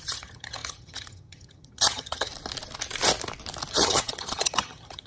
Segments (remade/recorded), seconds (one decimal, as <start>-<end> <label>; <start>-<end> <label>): 0.0-2.3 remade; 2.3-3.7 recorded; 3.7-5.1 remade